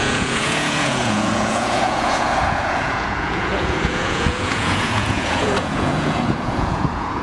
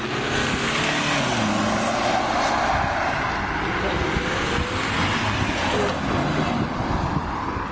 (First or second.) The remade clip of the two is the first